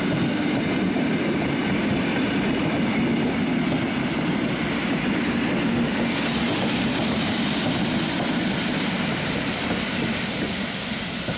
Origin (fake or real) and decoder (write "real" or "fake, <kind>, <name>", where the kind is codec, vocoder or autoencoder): real